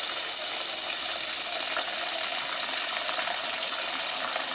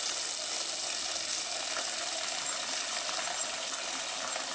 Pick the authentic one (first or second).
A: second